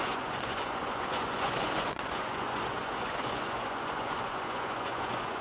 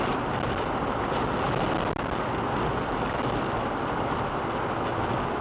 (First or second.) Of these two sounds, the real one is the second